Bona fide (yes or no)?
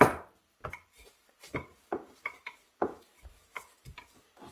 no